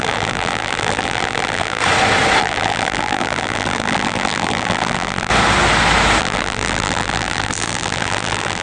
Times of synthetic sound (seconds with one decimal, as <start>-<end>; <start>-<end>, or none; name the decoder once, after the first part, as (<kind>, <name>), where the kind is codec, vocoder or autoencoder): 0.0-1.8 (vocoder, BigVGAN v2); 2.4-5.3; 6.2-8.6